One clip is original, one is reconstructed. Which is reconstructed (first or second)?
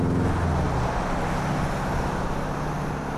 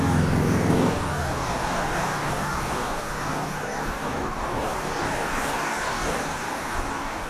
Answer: second